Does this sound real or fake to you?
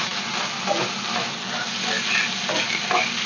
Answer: real